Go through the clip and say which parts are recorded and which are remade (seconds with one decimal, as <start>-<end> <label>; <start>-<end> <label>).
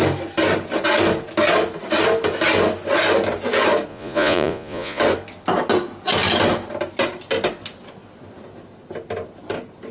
0.0-3.9 recorded; 3.9-5.0 remade; 5.0-9.9 recorded